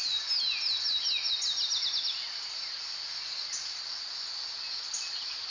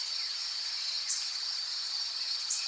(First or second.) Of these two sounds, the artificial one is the second